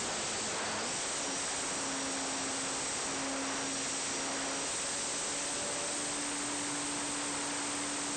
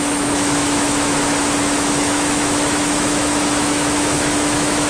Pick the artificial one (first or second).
second